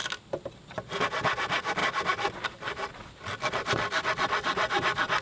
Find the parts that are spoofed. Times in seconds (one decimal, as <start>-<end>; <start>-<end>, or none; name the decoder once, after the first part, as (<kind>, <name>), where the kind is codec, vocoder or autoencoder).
none